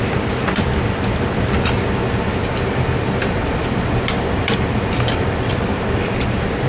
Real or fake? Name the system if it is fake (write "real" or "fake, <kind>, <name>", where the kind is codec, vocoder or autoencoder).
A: fake, vocoder, BigVGAN v2